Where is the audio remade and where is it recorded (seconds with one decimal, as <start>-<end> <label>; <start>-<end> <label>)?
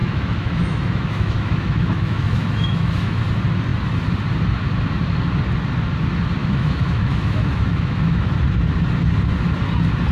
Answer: 0.0-3.2 remade; 3.2-6.4 recorded; 6.4-8.3 remade; 8.3-10.1 recorded